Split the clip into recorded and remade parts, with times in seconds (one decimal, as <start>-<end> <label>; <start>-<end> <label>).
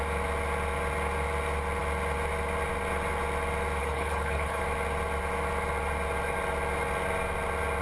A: 0.0-3.8 recorded; 3.8-4.6 remade; 4.6-7.8 recorded